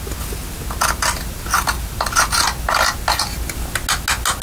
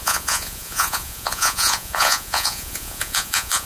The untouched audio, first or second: first